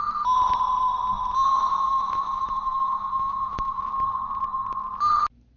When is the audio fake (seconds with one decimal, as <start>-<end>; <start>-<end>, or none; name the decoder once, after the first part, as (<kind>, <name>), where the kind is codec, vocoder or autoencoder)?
1.5-3.8 (autoencoder, DAC-VAE)